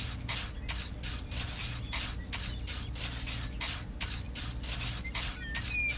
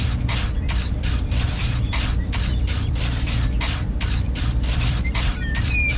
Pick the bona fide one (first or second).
first